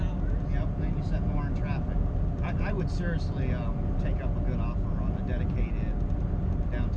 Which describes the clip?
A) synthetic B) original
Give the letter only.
B